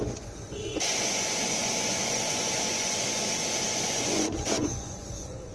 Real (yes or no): no